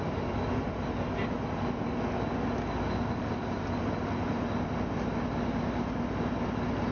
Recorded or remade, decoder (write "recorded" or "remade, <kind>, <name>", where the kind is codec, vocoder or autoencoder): recorded